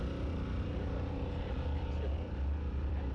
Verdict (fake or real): fake